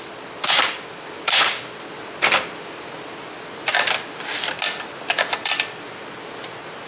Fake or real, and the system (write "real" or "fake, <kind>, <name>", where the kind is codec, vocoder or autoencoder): real